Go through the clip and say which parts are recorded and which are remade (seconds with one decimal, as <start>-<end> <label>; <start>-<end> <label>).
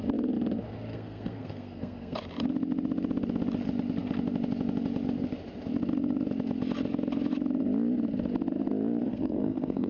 0.0-0.9 recorded; 0.9-2.2 remade; 2.2-9.1 recorded; 9.1-9.9 remade